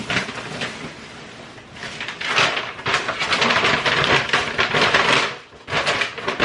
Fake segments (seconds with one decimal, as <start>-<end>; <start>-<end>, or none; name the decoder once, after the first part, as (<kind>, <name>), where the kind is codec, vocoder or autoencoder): 1.8-5.6 (vocoder, BigVGAN v2)